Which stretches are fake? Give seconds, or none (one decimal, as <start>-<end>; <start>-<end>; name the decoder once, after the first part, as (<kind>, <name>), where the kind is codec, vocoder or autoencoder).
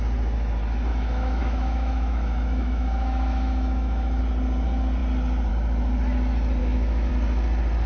0.9-4.2 (autoencoder, DAC-VAE); 6.6-7.1